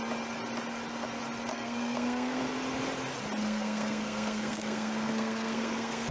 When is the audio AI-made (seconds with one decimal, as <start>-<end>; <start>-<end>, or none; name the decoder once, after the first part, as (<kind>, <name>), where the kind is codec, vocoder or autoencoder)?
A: 1.5-2.4 (codec, SNAC); 3.4-6.1

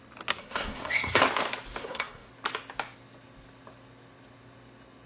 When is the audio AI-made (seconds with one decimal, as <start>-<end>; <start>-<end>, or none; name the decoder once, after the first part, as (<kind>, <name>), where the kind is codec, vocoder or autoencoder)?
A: 0.4-1.2 (codec, SNAC); 1.8-2.3

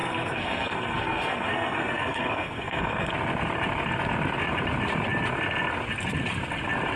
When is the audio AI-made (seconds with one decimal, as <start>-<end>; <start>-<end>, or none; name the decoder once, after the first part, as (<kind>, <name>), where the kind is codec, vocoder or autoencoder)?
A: 0.0-3.1 (codec, SNAC)

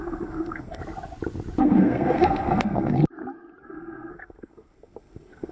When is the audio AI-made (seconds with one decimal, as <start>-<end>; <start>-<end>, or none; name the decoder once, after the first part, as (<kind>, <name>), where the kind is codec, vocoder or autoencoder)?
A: 0.0-0.8 (codec, SNAC); 1.6-3.0; 3.6-5.5